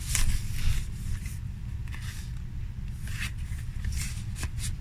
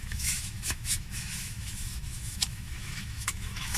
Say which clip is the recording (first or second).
first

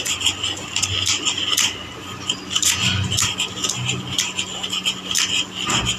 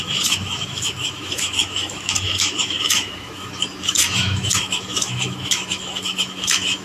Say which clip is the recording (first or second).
first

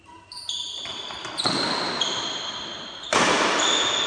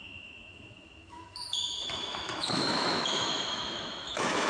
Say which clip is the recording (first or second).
first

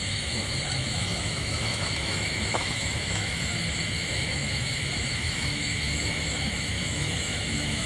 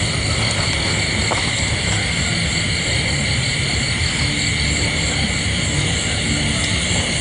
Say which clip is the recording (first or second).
second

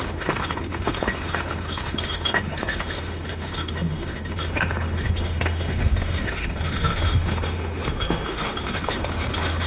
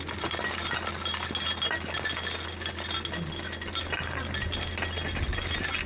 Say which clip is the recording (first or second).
second